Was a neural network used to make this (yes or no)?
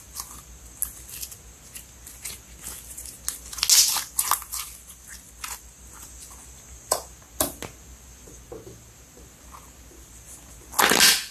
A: no